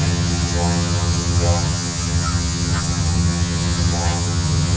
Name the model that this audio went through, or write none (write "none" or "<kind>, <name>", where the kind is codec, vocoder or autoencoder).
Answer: vocoder, HiFi-GAN